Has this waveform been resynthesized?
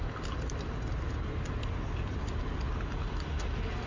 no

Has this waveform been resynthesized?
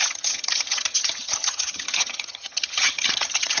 yes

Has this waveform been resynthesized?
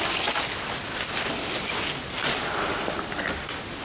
no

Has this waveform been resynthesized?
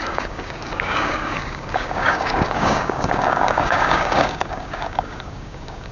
yes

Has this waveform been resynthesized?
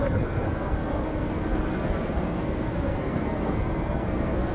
yes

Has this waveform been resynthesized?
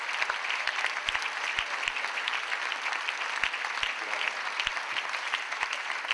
no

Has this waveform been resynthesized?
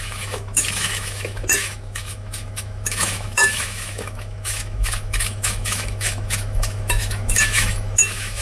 yes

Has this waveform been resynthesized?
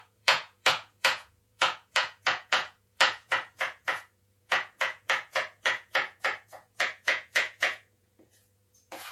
yes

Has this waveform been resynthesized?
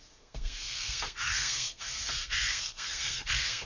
yes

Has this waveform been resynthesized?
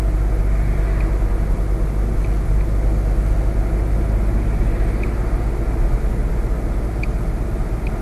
no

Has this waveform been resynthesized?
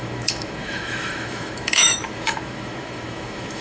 yes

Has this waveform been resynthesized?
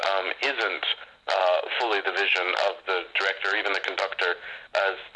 no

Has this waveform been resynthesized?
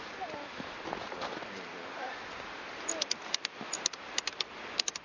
no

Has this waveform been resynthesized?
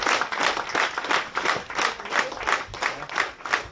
no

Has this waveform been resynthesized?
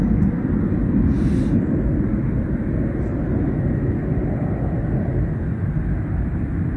no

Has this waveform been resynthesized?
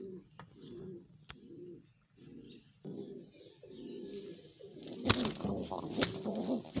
no